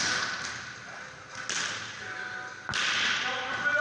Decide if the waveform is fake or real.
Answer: real